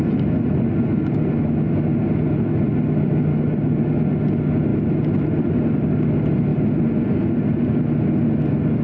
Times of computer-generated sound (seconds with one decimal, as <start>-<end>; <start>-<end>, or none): none